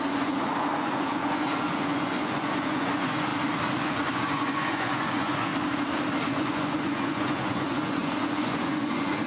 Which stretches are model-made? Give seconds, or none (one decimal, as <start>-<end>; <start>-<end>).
0.0-3.3; 3.8-5.5; 6.3-9.3